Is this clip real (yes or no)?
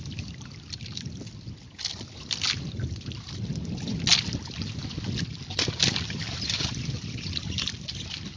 yes